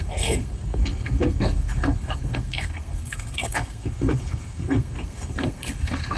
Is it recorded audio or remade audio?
remade